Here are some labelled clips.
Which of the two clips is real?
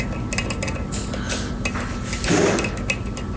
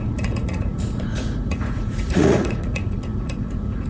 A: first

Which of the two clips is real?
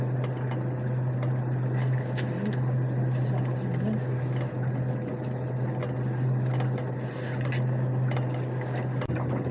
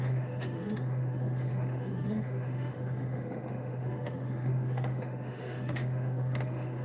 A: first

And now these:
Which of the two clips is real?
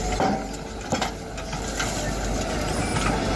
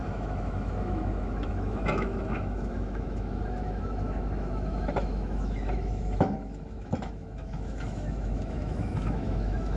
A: first